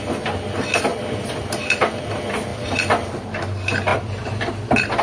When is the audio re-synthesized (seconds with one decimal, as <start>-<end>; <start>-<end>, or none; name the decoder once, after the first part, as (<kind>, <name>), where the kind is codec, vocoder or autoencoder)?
0.9-2.1 (vocoder, BigVGAN v2); 2.5-3.2; 3.9-4.5